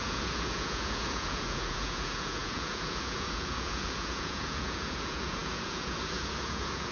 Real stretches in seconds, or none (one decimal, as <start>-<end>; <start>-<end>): none